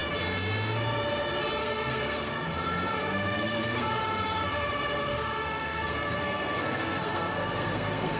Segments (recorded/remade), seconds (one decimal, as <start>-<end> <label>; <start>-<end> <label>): 0.0-1.6 recorded; 1.6-2.3 remade; 2.3-2.9 recorded; 2.9-4.0 remade; 4.0-5.1 recorded; 5.1-8.2 remade